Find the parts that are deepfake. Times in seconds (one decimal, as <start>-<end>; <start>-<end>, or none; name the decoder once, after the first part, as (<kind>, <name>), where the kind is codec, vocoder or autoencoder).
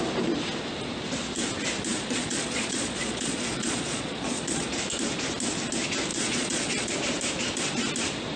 1.9-4.7 (vocoder, Vocos); 6.1-6.9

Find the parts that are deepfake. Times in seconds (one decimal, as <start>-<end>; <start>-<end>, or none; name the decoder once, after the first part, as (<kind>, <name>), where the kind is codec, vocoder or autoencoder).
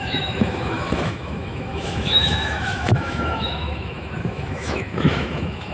0.0-5.7 (autoencoder, DAC-VAE)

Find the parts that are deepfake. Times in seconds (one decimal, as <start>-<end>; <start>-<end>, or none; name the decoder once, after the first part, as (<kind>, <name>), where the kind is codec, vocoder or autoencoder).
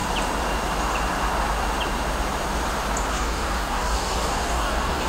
3.1-5.1 (codec, DAC)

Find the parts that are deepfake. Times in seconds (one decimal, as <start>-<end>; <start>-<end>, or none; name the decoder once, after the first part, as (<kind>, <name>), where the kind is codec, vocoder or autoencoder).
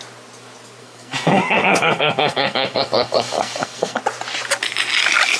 0.8-4.0 (codec, SNAC)